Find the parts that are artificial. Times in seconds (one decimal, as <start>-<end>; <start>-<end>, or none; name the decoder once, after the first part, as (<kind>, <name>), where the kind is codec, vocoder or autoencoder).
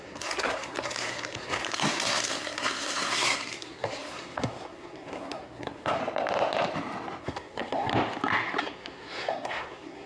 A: 0.0-6.0 (codec, SNAC); 7.2-7.9; 8.6-10.1